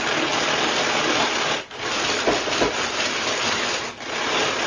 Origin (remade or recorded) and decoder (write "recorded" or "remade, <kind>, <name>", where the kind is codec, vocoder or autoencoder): recorded